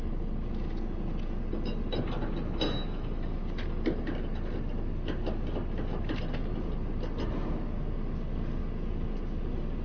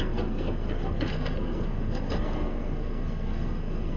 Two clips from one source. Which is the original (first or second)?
first